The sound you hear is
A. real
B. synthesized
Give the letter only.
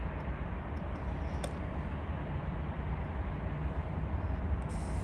A